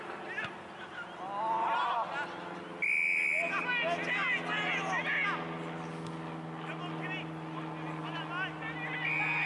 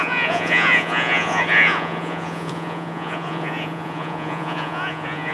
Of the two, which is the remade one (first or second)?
second